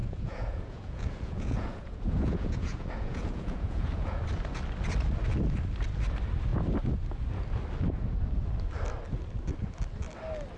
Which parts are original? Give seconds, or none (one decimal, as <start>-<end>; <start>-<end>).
4.2-10.6